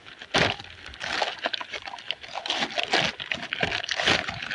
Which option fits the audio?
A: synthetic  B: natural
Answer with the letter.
B